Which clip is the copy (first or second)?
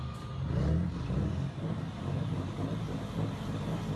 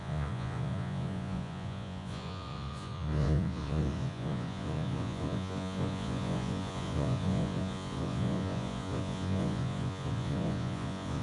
second